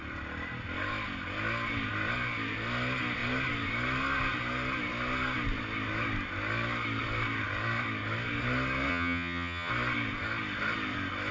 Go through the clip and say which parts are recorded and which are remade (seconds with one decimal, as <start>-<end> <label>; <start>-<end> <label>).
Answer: 0.0-8.9 recorded; 8.9-9.7 remade; 9.7-11.3 recorded